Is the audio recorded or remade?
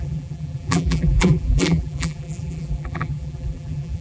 remade